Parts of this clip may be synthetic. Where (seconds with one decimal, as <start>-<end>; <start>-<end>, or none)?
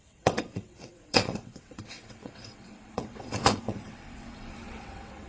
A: 0.0-5.3